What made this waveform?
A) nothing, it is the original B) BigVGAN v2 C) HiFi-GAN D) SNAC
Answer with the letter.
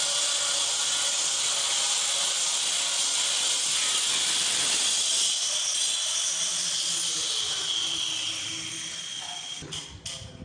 A